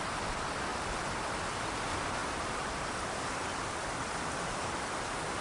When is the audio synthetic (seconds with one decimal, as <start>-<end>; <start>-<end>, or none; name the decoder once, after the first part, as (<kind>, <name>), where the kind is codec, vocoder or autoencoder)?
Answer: 0.7-1.4 (vocoder, BigVGAN v2); 2.2-4.8